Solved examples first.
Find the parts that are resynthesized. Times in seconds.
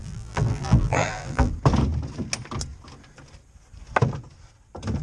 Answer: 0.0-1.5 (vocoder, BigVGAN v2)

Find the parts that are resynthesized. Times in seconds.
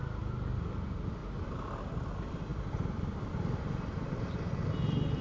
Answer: 2.5-4.3 (vocoder, BigVGAN v2)